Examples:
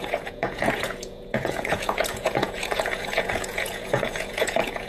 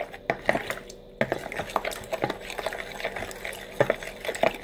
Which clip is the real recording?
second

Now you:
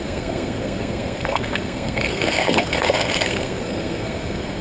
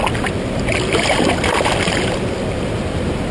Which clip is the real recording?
second